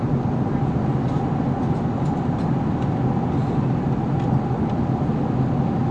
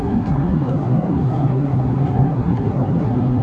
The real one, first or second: first